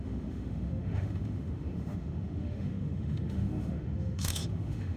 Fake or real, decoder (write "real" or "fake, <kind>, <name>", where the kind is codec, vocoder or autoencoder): fake, autoencoder, DAC-VAE